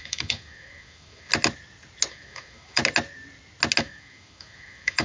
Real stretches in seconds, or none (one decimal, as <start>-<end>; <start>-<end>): 1.3-2.1; 2.8-3.8